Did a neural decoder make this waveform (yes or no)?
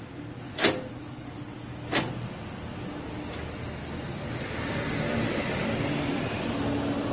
no